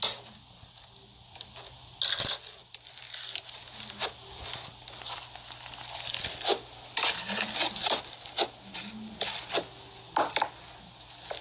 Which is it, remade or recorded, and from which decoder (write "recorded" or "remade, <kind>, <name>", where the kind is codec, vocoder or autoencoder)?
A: recorded